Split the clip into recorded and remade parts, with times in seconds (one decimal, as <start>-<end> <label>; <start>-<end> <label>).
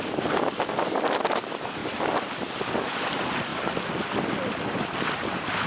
0.0-5.7 recorded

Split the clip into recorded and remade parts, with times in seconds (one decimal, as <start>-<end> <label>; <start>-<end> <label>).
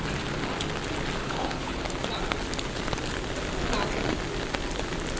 0.0-1.2 recorded; 1.2-1.8 remade; 1.8-5.2 recorded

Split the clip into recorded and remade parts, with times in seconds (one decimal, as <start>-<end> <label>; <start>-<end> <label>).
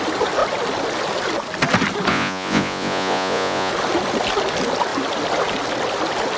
0.0-2.1 recorded; 2.1-3.7 remade; 3.7-6.4 recorded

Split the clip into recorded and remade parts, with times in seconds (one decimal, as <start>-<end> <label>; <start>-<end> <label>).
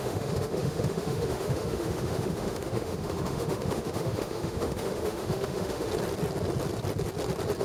0.0-5.9 remade; 5.9-7.6 recorded